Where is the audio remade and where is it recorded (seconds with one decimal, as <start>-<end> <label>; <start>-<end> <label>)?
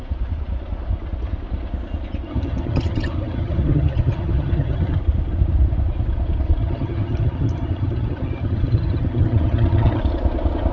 0.0-2.3 recorded; 2.3-5.0 remade; 5.0-6.6 recorded; 6.6-10.0 remade; 10.0-10.7 recorded